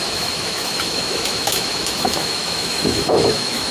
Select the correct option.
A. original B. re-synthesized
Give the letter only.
B